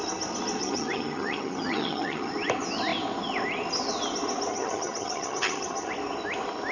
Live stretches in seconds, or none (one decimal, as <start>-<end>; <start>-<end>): 0.0-0.6; 2.3-4.5; 5.9-6.7